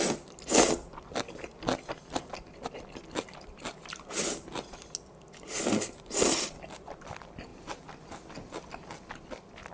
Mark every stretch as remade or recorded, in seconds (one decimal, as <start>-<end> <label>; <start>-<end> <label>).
0.0-9.7 recorded